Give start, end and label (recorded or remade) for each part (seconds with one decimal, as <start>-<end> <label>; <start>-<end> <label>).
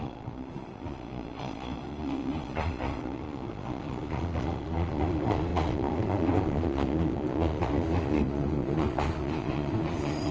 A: 0.0-10.3 remade